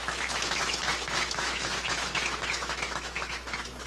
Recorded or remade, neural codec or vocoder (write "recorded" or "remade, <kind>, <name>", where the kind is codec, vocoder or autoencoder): remade, autoencoder, DAC-VAE